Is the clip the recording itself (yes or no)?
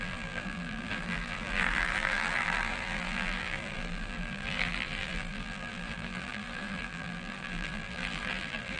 no